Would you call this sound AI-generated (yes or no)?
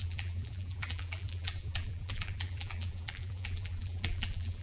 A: yes